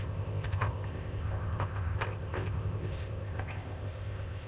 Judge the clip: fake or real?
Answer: fake